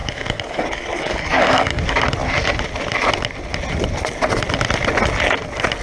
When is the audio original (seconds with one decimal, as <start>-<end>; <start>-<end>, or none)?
1.8-5.8